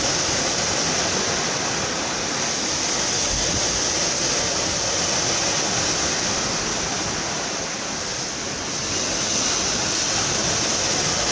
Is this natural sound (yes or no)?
yes